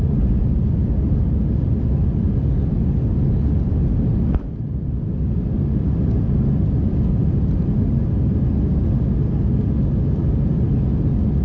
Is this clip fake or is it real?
real